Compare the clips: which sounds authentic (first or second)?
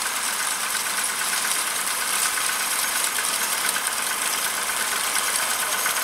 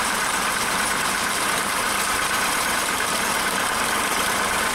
first